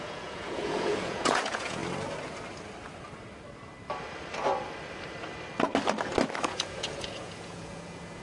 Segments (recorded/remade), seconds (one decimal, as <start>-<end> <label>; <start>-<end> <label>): 0.0-1.8 remade; 1.8-6.4 recorded; 6.4-8.2 remade